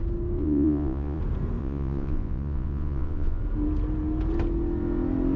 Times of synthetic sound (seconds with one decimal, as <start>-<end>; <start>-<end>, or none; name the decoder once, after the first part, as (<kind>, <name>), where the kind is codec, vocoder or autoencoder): 0.4-1.2 (vocoder, Vocos); 1.6-3.4